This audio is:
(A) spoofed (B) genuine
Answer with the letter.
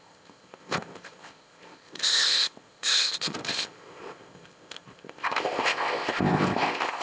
A